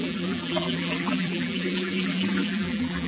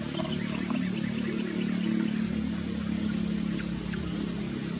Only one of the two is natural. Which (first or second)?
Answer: second